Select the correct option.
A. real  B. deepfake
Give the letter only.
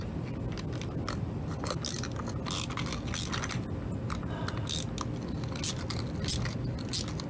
A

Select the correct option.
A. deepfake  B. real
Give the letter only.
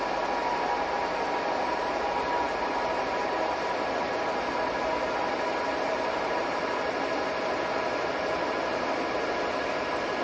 B